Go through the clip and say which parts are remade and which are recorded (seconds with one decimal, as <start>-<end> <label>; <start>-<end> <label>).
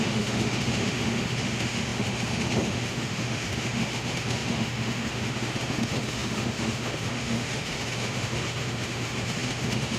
0.0-10.0 remade